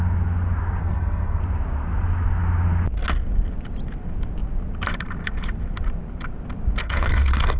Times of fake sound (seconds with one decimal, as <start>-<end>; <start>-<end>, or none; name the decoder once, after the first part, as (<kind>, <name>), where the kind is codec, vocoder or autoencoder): 0.8-1.4 (codec, SNAC); 6.8-7.6